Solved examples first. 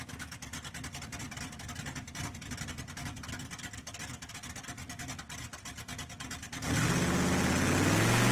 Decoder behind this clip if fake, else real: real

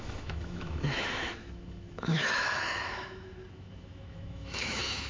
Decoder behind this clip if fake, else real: fake, autoencoder, DAC-VAE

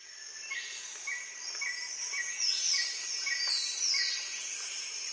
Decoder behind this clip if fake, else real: real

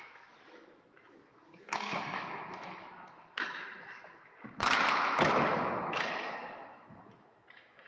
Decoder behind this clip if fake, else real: fake, autoencoder, DAC-VAE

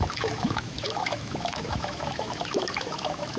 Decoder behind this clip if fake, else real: fake, autoencoder, DAC-VAE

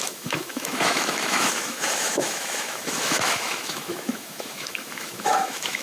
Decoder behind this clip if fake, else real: fake, autoencoder, DAC-VAE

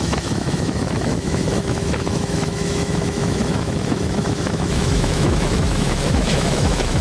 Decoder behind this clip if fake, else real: fake, autoencoder, DAC-VAE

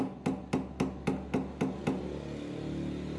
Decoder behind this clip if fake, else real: real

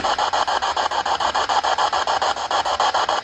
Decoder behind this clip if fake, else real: real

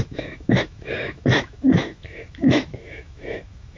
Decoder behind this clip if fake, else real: fake, autoencoder, DAC-VAE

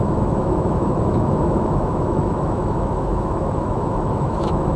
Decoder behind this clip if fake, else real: fake, autoencoder, DAC-VAE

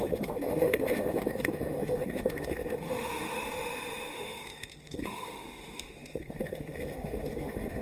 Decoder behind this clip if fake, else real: fake, autoencoder, DAC-VAE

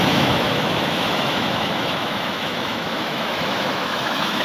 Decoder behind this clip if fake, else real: fake, autoencoder, DAC-VAE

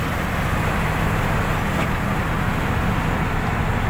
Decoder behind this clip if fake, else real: real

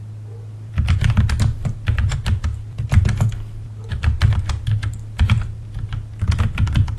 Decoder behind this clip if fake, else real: real